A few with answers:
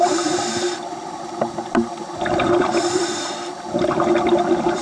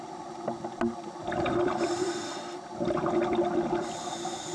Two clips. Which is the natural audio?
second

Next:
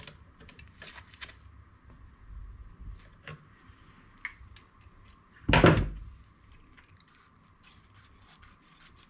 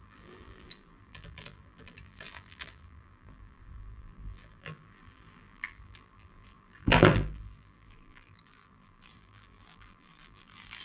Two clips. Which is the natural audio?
first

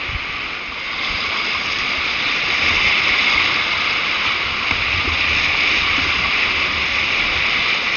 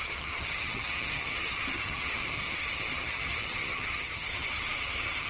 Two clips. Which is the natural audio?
first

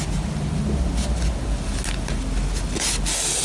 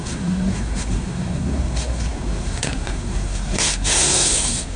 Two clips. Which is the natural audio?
first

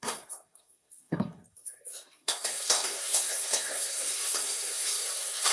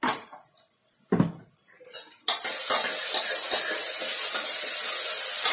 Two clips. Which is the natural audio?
second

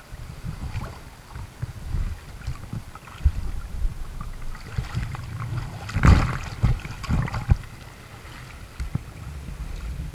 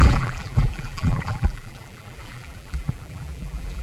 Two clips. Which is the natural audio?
first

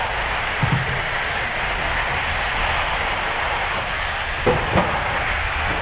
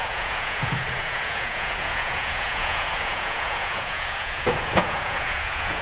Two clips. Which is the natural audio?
first